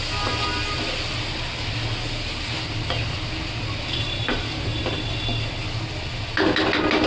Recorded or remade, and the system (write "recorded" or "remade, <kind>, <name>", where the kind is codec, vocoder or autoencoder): recorded